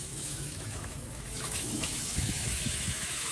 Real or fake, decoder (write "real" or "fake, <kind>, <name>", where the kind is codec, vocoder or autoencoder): fake, autoencoder, DAC-VAE